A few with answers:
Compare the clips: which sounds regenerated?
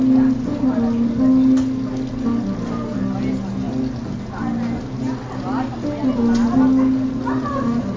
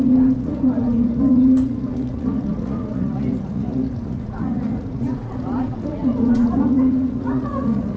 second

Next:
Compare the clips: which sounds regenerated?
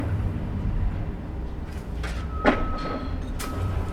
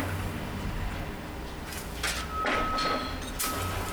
first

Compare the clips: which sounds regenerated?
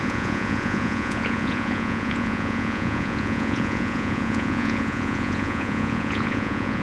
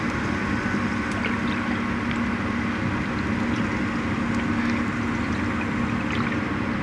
first